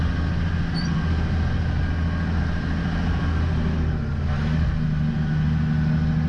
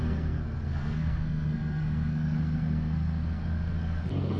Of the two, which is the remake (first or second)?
second